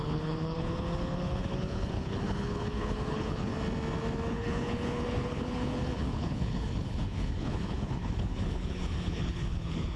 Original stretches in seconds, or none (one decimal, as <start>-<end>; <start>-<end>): 3.5-4.3